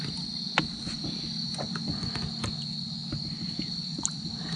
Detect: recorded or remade recorded